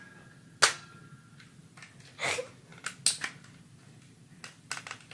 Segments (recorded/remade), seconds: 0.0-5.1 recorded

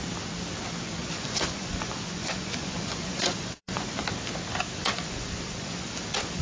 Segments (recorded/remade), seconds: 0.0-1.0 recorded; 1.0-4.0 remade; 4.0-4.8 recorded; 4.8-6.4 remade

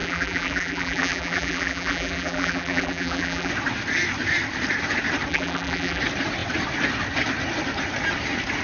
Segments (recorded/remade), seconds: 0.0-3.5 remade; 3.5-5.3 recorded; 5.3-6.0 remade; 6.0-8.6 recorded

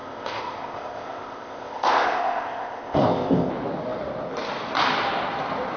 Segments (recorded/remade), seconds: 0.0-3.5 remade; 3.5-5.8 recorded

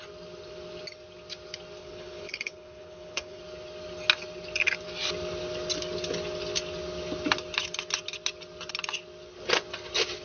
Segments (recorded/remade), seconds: 0.0-1.8 recorded; 1.8-3.4 remade; 3.4-10.2 recorded

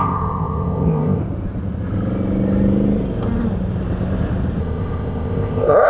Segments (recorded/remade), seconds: 0.0-1.2 remade; 1.2-4.6 recorded; 4.6-5.9 remade